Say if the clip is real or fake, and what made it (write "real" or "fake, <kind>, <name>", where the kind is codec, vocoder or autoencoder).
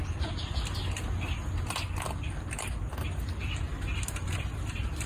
real